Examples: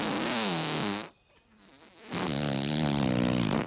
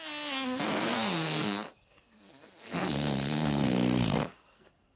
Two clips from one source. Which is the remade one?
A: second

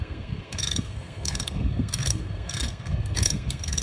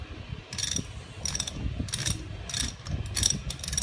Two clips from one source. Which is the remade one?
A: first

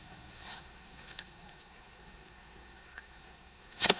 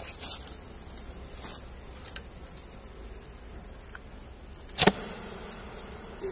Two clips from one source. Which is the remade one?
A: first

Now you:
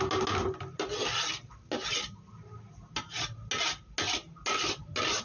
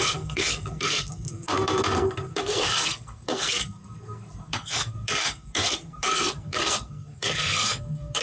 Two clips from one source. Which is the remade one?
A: second